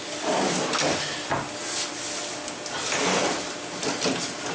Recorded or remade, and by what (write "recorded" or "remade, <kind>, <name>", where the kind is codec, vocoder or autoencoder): recorded